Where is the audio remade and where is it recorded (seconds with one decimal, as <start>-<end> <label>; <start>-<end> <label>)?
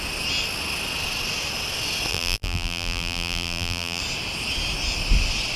0.0-2.1 recorded; 2.1-4.0 remade; 4.0-5.6 recorded